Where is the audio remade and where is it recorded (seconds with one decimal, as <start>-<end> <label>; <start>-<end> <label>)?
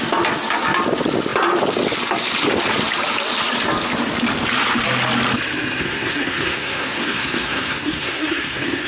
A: 0.0-5.8 recorded; 5.8-8.9 remade